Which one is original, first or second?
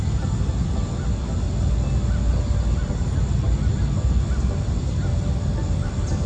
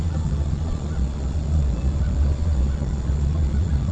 first